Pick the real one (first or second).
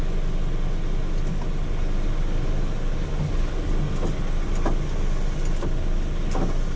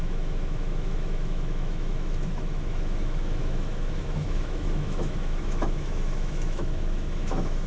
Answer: first